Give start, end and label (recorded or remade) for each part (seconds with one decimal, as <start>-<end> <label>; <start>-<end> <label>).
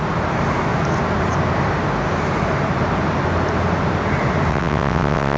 0.0-4.5 recorded; 4.5-5.4 remade